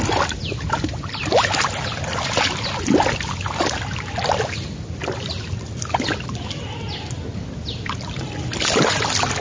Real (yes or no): yes